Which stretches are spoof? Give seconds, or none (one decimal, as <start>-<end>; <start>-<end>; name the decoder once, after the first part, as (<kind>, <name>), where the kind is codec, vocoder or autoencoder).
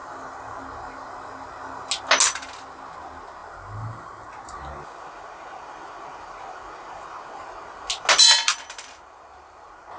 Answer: none